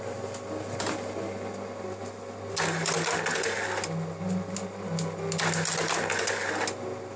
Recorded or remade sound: recorded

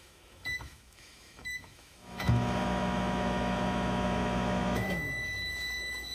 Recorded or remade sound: remade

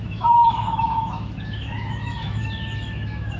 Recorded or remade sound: remade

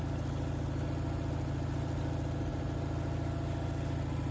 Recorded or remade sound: recorded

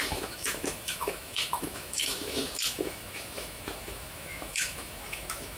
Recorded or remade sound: remade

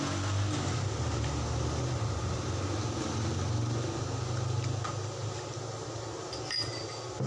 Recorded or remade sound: recorded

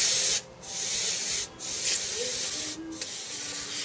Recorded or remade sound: recorded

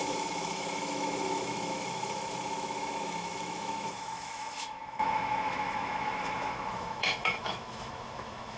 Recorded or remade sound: remade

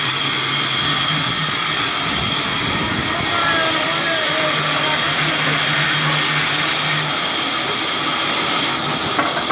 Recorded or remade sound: recorded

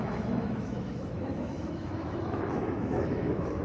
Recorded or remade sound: remade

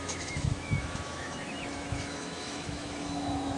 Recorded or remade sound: remade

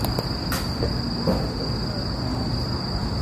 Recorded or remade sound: recorded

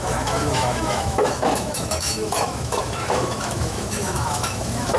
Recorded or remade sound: remade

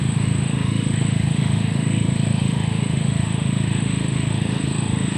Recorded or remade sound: remade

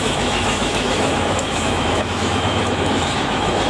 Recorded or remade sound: remade